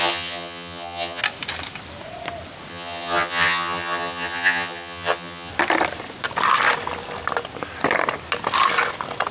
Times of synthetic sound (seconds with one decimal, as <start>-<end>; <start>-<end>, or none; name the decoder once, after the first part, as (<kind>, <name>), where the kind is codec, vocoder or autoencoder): 0.0-1.2 (vocoder, HiFi-GAN); 2.7-5.5